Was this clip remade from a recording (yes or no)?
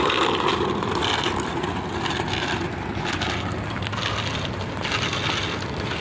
no